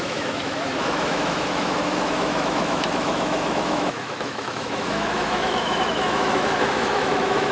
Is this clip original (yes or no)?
no